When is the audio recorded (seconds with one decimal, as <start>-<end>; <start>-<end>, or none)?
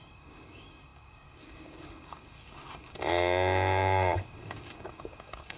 none